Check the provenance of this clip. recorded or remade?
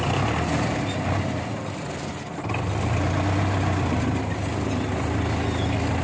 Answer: recorded